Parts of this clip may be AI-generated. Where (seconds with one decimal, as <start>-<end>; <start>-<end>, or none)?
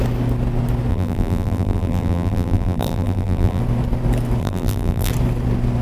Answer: 0.9-3.6; 4.4-5.1